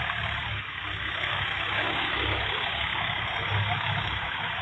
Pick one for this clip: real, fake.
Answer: fake